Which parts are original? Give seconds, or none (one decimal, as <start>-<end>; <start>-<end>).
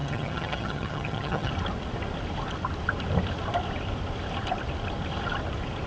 1.5-5.9